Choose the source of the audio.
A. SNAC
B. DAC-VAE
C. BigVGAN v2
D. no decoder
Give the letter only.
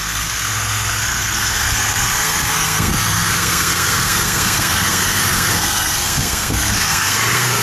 A